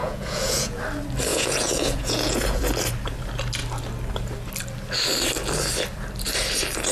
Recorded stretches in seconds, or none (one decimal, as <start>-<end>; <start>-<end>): 0.8-1.3; 2.6-6.9